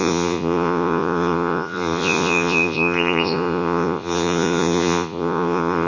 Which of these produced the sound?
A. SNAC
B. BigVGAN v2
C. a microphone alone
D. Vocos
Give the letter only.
D